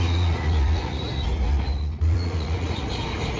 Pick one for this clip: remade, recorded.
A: remade